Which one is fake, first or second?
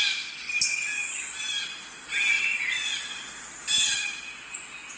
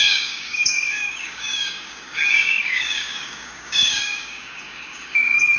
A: second